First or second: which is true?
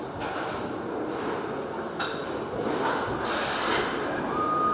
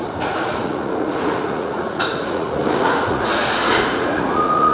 first